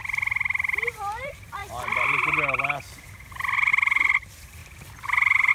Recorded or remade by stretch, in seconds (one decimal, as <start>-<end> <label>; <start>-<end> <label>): 0.0-0.7 recorded; 0.7-1.6 remade; 1.6-3.7 recorded; 3.7-5.5 remade